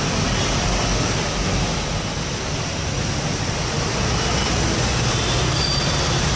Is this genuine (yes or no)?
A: yes